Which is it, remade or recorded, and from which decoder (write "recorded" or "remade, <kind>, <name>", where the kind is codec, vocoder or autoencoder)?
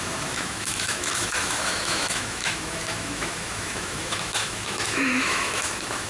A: remade, autoencoder, DAC-VAE